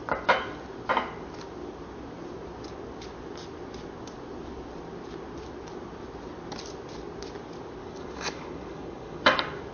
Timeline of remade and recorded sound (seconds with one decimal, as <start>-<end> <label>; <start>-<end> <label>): 0.0-7.8 recorded; 7.8-9.2 remade; 9.2-9.7 recorded